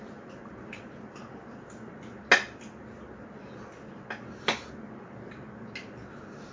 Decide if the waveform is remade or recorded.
recorded